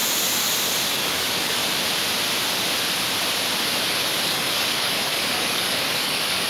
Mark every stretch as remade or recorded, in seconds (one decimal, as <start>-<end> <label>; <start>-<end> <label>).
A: 0.0-0.9 recorded; 0.9-1.6 remade; 1.6-3.9 recorded; 3.9-6.5 remade